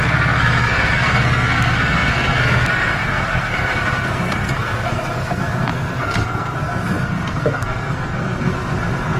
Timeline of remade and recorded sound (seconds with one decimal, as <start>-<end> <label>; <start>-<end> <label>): 0.0-9.2 remade

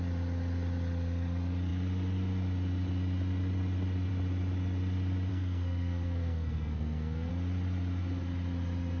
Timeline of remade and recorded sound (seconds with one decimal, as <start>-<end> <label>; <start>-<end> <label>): 0.0-5.3 recorded; 5.3-7.3 remade; 7.3-9.0 recorded

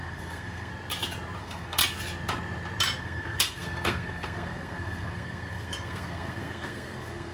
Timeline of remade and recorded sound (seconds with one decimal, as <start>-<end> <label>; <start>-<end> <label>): 0.0-0.7 remade; 0.7-1.4 recorded; 1.4-1.8 remade; 1.8-3.0 recorded; 3.0-7.3 remade

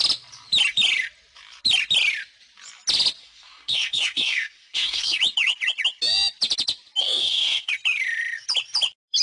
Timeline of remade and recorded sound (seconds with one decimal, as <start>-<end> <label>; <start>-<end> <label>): 0.0-3.2 recorded; 3.2-5.2 remade; 5.2-7.0 recorded; 7.0-7.7 remade; 7.7-9.2 recorded

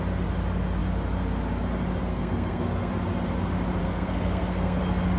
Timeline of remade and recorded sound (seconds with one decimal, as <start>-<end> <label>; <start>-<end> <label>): 0.0-2.1 recorded; 2.1-2.9 remade; 2.9-3.8 recorded; 3.8-4.8 remade; 4.8-5.2 recorded